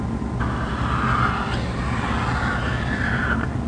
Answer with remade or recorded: recorded